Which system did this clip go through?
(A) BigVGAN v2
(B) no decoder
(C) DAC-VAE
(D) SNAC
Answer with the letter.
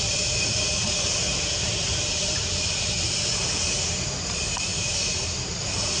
B